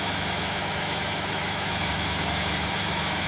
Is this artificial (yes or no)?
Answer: yes